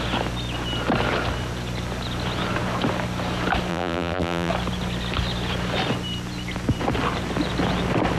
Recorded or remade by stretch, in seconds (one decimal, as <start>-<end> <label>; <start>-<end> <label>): 0.0-3.7 recorded; 3.7-4.5 remade; 4.5-8.2 recorded